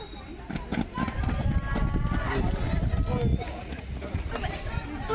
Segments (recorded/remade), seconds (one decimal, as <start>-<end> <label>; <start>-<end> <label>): 0.0-3.3 recorded; 3.3-4.3 remade; 4.3-5.1 recorded